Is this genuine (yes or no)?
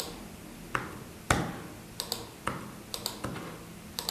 yes